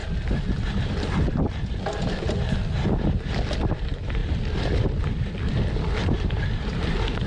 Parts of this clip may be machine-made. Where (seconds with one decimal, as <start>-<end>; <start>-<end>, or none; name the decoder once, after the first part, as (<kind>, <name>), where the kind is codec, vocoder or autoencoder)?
3.7-4.2 (vocoder, BigVGAN v2); 6.1-7.3